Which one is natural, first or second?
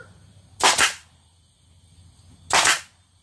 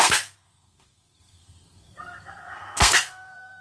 first